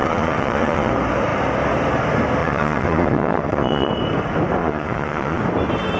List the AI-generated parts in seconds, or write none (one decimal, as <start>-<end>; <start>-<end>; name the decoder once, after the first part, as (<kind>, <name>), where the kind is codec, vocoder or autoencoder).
0.0-0.9 (vocoder, Vocos); 2.4-3.9; 4.6-5.4